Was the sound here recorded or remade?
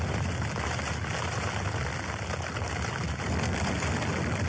recorded